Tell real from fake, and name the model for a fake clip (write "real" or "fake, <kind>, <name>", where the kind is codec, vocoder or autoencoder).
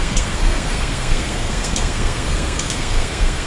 fake, codec, SNAC